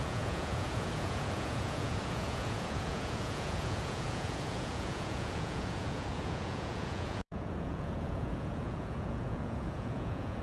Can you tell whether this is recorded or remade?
remade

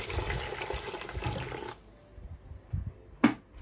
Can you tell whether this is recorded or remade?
recorded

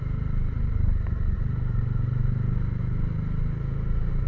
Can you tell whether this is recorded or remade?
recorded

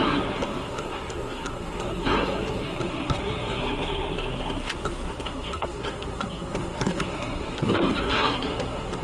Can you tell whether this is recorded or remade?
remade